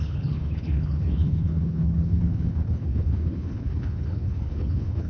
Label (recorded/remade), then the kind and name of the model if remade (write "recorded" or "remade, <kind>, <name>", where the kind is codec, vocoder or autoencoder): remade, codec, HILCodec